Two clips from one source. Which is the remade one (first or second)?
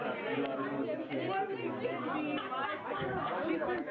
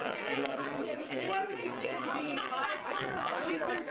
second